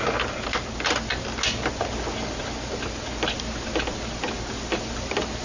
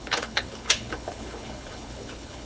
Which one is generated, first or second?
second